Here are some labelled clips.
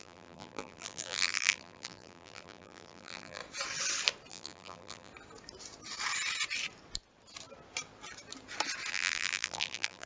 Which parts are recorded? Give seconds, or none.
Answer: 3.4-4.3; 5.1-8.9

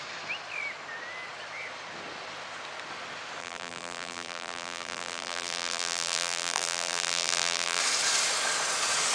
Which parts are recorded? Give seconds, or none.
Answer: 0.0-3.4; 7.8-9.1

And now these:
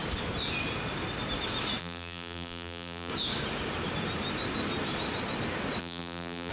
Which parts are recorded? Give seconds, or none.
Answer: 0.0-1.8; 3.1-5.8